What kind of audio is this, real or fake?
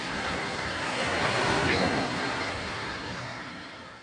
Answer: fake